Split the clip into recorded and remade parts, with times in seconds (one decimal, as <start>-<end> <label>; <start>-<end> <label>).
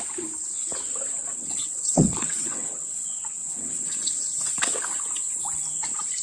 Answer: 0.0-1.2 recorded; 1.2-4.8 remade; 4.8-6.2 recorded